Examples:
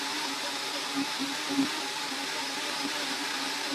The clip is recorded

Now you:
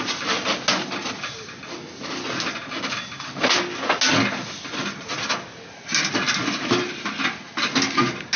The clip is recorded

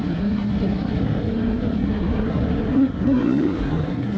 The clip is remade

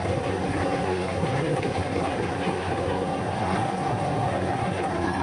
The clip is remade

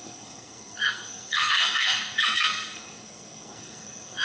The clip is remade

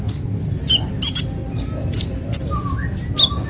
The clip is recorded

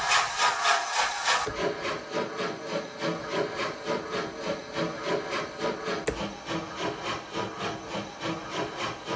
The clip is recorded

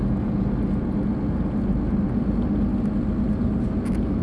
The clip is recorded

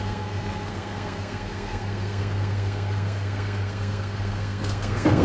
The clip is remade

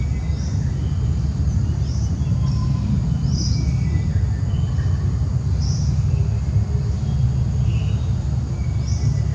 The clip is recorded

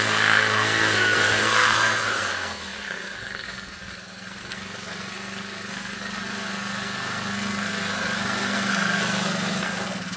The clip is remade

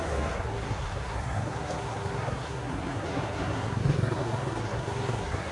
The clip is remade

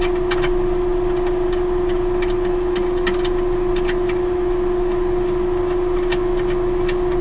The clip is recorded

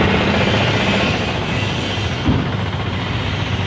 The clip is recorded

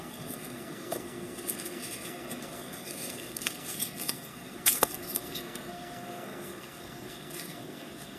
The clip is remade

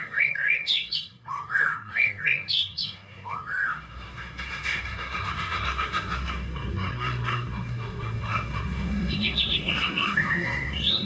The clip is remade